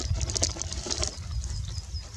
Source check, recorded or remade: recorded